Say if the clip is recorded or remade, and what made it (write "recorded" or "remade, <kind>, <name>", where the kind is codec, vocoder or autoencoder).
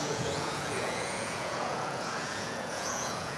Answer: remade, vocoder, Vocos